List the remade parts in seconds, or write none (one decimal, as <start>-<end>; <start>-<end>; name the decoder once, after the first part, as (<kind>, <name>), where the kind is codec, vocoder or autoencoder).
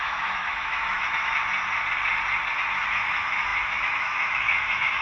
0.0-1.4 (autoencoder, DAC-VAE); 2.8-5.0